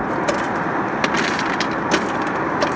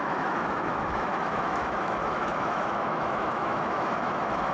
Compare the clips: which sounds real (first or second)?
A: first